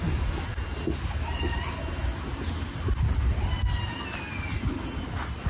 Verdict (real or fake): real